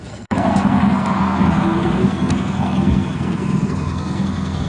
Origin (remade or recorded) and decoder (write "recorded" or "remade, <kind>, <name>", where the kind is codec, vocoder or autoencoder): remade, codec, SNAC